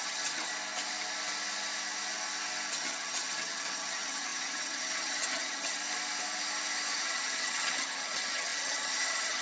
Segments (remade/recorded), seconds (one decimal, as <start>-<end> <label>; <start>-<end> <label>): 0.0-0.5 remade; 0.5-2.7 recorded; 2.7-5.8 remade; 5.8-6.9 recorded; 6.9-9.4 remade